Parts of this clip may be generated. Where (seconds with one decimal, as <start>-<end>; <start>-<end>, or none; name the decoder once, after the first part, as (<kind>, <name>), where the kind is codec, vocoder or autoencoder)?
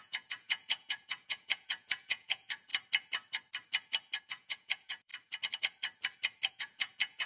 0.0-2.7 (vocoder, Vocos); 4.2-5.1; 6.5-7.3